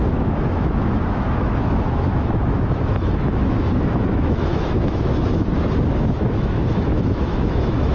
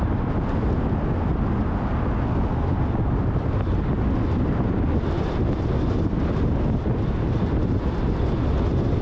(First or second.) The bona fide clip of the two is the second